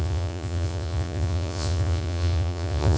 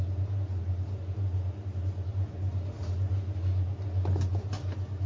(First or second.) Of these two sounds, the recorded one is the second